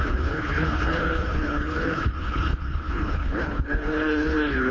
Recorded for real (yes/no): no